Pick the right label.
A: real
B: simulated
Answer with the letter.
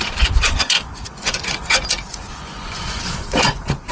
B